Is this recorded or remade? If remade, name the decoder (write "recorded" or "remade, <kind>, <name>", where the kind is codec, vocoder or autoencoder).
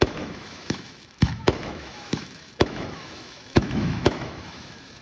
remade, autoencoder, DAC-VAE